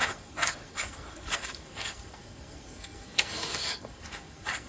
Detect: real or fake fake